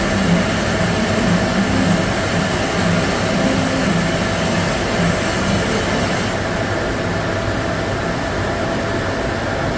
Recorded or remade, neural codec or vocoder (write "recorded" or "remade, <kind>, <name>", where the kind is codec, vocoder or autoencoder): recorded